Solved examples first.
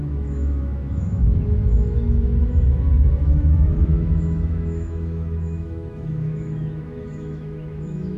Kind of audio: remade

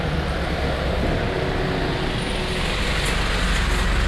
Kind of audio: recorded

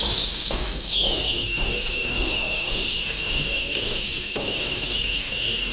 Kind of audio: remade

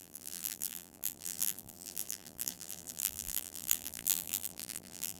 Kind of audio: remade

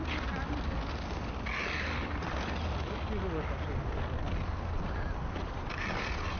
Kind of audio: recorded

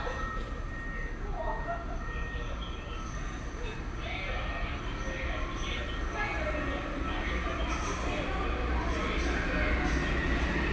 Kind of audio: recorded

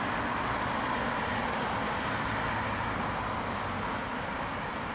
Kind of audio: recorded